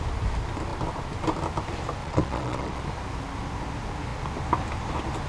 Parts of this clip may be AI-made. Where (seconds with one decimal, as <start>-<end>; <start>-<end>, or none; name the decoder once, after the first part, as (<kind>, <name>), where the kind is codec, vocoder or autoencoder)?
2.0-2.8 (vocoder, Vocos)